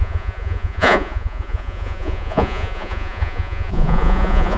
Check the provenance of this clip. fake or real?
fake